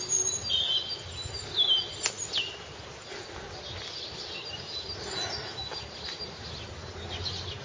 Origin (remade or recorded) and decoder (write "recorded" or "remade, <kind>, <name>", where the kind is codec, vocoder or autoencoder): recorded